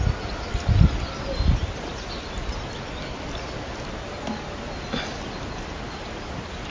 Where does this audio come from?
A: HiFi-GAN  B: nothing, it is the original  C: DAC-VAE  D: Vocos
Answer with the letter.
B